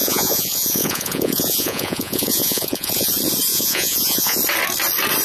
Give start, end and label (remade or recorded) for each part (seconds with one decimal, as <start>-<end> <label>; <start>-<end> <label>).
0.0-3.1 remade; 3.1-3.5 recorded; 3.5-4.4 remade; 4.4-5.2 recorded